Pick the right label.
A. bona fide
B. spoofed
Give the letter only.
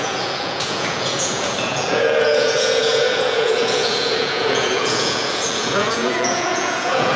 B